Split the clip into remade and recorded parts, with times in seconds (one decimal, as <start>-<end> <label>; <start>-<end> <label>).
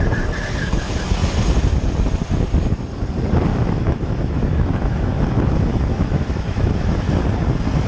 0.0-3.5 recorded; 3.5-7.2 remade; 7.2-7.9 recorded